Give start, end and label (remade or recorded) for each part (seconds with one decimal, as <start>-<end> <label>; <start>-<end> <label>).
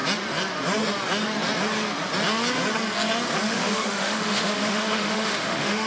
0.0-3.5 recorded; 3.5-5.9 remade